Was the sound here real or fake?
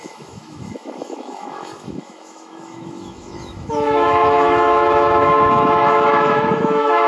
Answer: fake